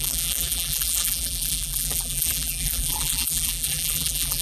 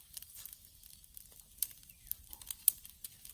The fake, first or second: first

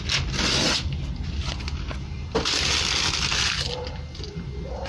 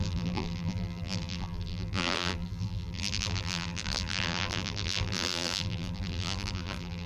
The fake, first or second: second